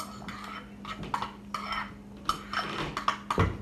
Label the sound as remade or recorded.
recorded